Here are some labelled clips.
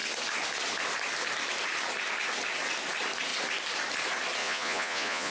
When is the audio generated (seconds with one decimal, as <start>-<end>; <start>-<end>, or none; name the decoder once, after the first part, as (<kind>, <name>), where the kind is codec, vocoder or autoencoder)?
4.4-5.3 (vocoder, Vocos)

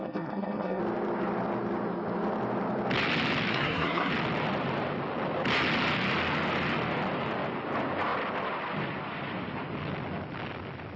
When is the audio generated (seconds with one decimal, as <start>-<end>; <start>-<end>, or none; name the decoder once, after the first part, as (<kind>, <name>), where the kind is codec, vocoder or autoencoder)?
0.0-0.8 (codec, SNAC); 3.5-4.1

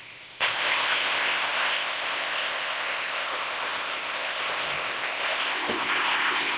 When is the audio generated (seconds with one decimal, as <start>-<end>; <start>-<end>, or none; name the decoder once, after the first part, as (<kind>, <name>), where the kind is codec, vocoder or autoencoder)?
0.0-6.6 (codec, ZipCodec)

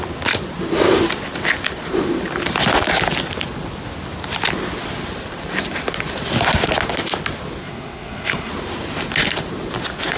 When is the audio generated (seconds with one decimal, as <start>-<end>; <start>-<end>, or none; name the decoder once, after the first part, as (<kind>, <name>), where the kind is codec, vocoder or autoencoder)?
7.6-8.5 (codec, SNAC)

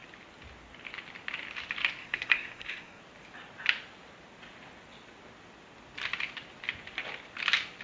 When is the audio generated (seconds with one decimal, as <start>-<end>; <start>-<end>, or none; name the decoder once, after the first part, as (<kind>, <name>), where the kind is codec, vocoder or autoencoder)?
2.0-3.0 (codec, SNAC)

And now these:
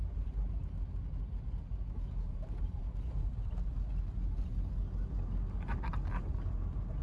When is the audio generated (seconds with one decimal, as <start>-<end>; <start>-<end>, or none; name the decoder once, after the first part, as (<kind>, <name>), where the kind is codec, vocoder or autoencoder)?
1.6-3.7 (vocoder, BigVGAN v2)

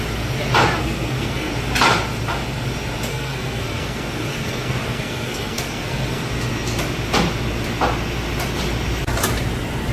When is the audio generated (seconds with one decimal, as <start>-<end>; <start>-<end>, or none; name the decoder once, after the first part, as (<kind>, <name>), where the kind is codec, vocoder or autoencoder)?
0.8-1.5 (codec, SNAC); 3.1-6.2

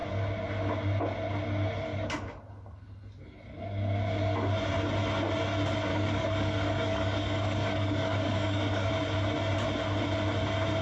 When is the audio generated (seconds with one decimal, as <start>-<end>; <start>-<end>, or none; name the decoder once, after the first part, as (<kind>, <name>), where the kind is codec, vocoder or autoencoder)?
5.9-8.9 (codec, DAC)